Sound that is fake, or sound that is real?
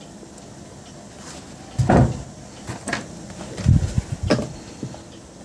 real